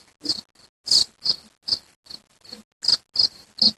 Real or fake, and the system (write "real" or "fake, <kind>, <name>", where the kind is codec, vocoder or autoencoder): real